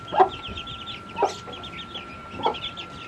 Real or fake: real